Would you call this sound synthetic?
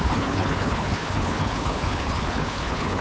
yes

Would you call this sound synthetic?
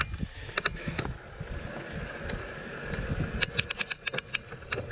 no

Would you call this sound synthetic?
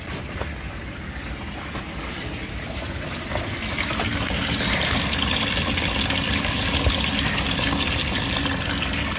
no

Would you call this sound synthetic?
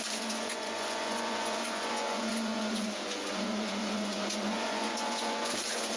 yes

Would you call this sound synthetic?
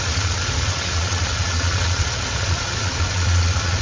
yes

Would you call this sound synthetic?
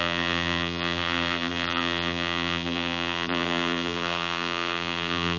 yes